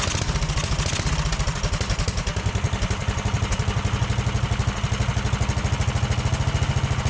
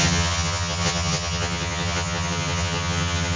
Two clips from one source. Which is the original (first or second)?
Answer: first